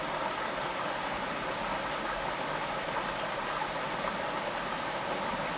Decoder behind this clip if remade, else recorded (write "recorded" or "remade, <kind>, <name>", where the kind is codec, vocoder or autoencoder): recorded